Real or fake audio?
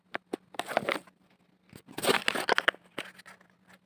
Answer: real